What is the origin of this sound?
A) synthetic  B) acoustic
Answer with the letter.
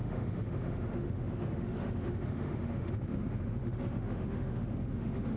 A